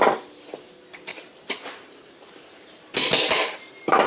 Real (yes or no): yes